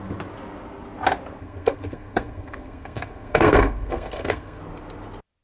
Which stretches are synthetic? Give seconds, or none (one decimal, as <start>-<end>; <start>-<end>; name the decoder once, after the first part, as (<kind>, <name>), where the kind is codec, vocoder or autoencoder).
1.4-4.6 (codec, SNAC)